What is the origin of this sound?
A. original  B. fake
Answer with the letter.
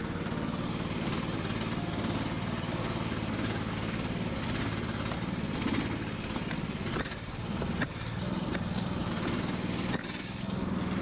A